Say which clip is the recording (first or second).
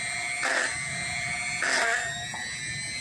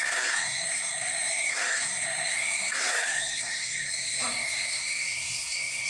first